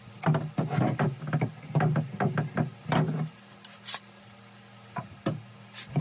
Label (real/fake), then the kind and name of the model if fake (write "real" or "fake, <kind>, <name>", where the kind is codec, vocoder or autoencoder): real